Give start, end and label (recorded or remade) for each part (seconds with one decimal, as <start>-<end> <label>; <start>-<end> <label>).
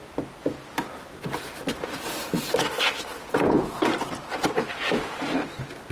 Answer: 0.0-3.1 recorded; 3.1-3.8 remade; 3.8-5.9 recorded